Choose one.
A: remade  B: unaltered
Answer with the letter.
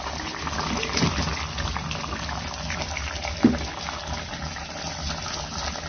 B